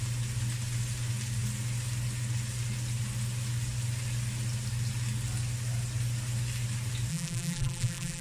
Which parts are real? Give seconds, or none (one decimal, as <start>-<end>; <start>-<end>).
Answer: 0.0-7.1